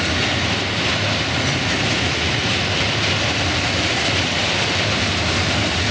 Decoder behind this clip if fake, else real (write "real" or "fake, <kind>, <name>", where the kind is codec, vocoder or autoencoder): real